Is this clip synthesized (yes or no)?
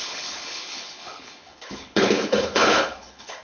yes